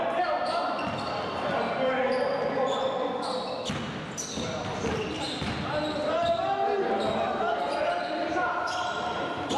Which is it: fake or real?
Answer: real